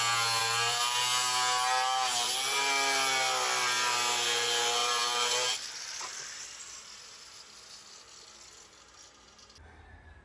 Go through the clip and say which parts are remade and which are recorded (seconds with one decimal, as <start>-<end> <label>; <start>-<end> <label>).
0.0-0.4 recorded; 0.4-1.0 remade; 1.0-4.8 recorded; 4.8-7.0 remade; 7.0-10.2 recorded